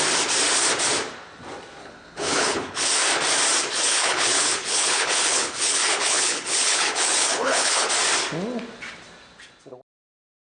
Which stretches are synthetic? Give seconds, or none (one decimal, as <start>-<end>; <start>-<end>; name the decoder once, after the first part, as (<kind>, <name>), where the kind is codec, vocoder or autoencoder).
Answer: 1.8-2.8 (codec, HILCodec); 3.9-7.9